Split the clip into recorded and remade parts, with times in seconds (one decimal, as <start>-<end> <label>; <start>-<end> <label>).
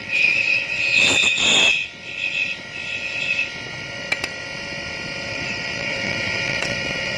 0.0-1.8 remade; 1.8-5.3 recorded; 5.3-7.2 remade